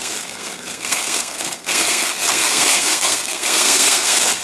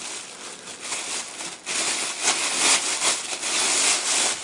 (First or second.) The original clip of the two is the second